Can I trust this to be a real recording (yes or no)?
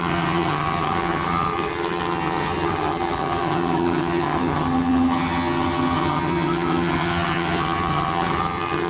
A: no